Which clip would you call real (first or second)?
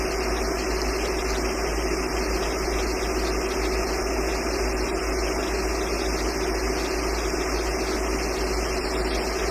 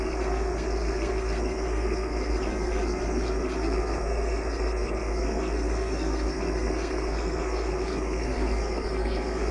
first